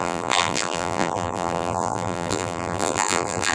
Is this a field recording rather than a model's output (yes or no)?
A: no